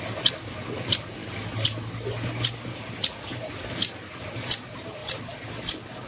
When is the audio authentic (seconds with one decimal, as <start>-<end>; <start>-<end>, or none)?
0.0-6.1